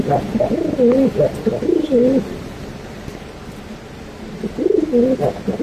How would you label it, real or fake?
real